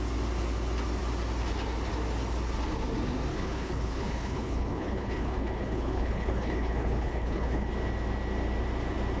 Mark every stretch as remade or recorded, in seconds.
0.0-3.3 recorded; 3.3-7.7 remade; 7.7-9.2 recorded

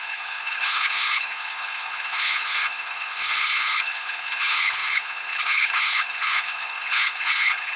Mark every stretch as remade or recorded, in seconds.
0.0-7.8 remade

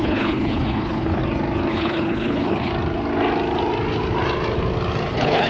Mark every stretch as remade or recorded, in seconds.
0.0-1.2 remade; 1.2-1.7 recorded; 1.7-2.7 remade; 2.7-5.1 recorded; 5.1-5.5 remade

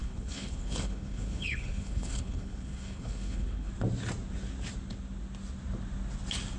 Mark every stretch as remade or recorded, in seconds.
0.0-3.7 remade; 3.7-6.6 recorded